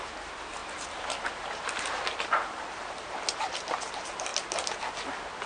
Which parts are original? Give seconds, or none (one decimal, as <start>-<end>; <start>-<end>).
0.0-5.5